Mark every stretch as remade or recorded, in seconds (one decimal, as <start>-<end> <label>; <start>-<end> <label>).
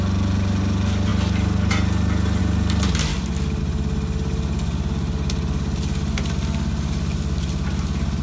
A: 0.0-8.2 recorded